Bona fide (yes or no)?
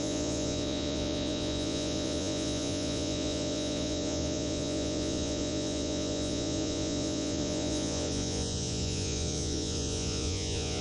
no